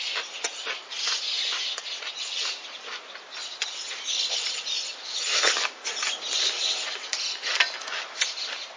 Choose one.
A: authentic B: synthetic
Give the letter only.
A